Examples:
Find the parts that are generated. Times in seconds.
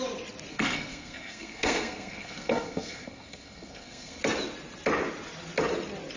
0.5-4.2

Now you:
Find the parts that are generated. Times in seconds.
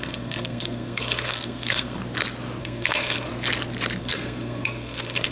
0.0-2.0; 2.6-3.3; 4.0-5.3